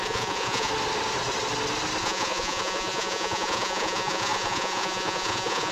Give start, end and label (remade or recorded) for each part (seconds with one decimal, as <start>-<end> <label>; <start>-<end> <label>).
0.0-0.7 remade; 0.7-2.0 recorded; 2.0-5.7 remade